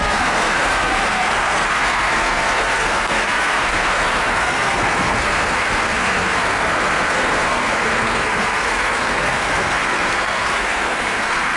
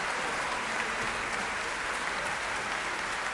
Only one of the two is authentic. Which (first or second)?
second